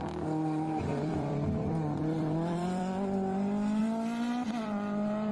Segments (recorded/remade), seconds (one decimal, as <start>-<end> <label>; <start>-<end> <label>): 0.0-0.9 recorded; 0.9-2.8 remade; 2.8-3.8 recorded; 3.8-5.3 remade